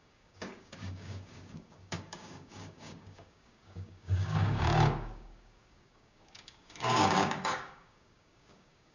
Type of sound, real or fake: fake